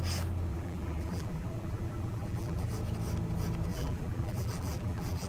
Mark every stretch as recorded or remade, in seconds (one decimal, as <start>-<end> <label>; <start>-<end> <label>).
0.0-0.5 recorded; 0.5-2.7 remade; 2.7-3.7 recorded; 3.7-5.3 remade